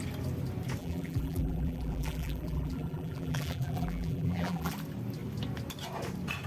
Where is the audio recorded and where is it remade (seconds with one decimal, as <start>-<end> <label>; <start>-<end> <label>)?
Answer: 0.0-0.8 recorded; 0.8-4.7 remade; 4.7-6.5 recorded